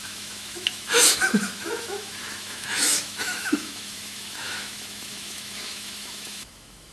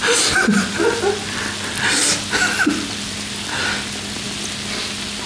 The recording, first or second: second